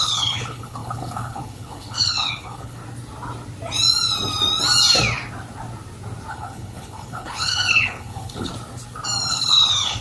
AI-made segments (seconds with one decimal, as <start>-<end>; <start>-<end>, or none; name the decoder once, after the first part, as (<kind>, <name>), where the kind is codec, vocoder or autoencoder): 0.0-2.8 (codec, HILCodec); 6.3-8.5; 9.3-10.0